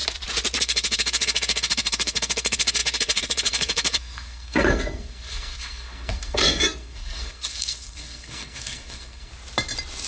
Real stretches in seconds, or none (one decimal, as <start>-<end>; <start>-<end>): 0.0-0.6; 9.3-10.1